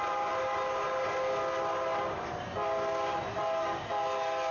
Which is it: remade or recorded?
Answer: recorded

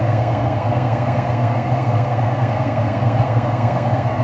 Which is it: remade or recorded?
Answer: remade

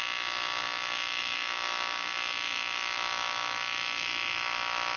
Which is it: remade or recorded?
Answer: recorded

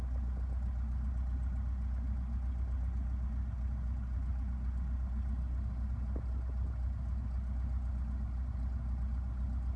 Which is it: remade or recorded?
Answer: recorded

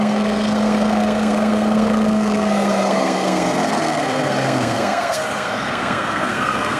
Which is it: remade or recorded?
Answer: remade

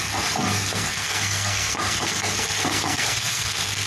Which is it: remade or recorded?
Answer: remade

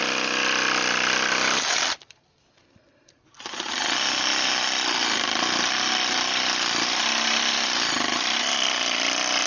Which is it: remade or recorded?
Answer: recorded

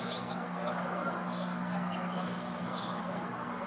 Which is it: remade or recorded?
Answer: remade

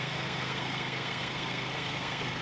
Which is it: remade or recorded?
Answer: remade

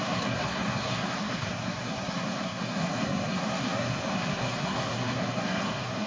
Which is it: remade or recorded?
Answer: remade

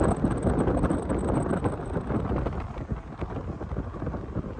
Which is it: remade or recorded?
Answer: recorded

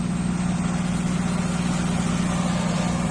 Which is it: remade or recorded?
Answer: recorded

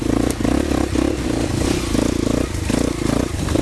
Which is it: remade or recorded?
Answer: recorded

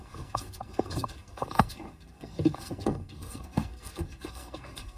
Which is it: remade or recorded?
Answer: remade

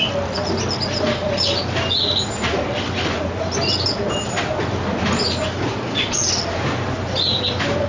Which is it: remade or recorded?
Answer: recorded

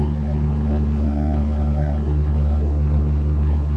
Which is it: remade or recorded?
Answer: remade